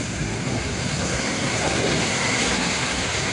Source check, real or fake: fake